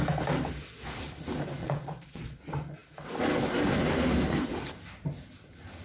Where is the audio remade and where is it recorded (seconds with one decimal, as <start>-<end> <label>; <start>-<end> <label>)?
0.0-1.6 recorded; 1.6-2.4 remade; 2.4-5.8 recorded